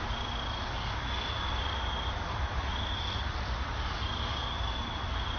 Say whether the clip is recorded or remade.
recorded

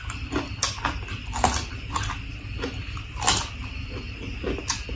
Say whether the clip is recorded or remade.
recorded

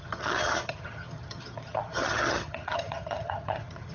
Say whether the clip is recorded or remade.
remade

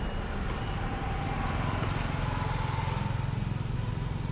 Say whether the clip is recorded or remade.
recorded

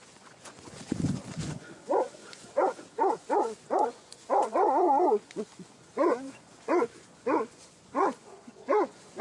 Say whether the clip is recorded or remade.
remade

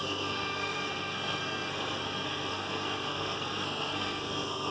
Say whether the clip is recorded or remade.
remade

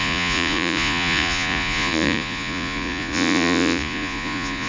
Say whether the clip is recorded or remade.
remade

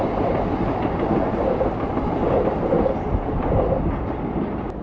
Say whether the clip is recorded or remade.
recorded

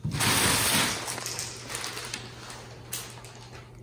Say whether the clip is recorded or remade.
recorded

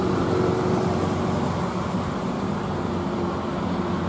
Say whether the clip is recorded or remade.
recorded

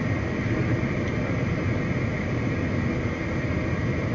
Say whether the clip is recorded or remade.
recorded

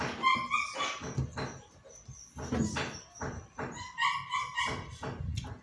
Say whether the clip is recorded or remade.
recorded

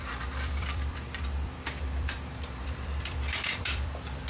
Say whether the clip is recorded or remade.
remade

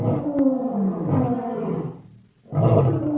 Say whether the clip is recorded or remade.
recorded